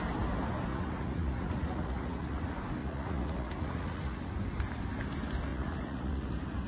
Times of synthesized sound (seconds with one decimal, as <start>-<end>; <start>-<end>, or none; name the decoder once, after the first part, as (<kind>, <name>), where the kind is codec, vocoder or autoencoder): 0.7-2.4 (vocoder, Vocos); 2.8-4.3; 5.5-6.3